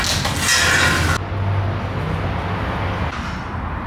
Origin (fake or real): real